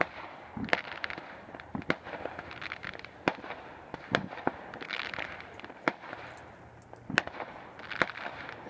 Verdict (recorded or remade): recorded